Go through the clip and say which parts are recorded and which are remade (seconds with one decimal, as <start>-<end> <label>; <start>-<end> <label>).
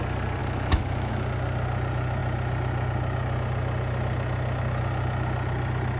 0.0-0.4 recorded; 0.4-1.1 remade; 1.1-6.0 recorded